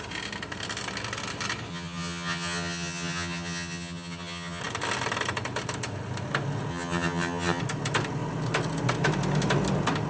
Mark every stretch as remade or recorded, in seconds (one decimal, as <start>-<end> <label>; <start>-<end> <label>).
0.0-1.7 recorded; 1.7-4.6 remade; 4.6-6.7 recorded; 6.7-7.6 remade; 7.6-10.1 recorded